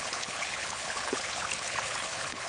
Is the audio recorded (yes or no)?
no